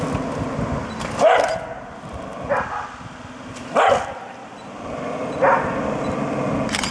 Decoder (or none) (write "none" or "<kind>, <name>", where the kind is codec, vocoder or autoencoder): none